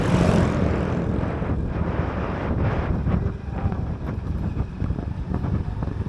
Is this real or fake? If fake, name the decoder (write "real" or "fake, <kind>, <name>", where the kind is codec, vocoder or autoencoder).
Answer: fake, vocoder, BigVGAN v2